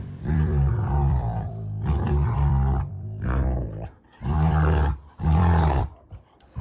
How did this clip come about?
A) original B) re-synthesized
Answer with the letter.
B